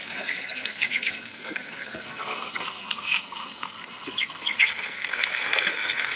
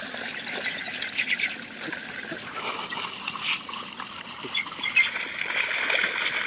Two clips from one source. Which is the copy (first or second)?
first